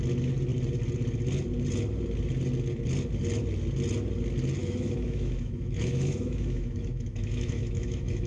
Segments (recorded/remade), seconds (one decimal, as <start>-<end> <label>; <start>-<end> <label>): 0.0-4.6 recorded; 4.6-8.3 remade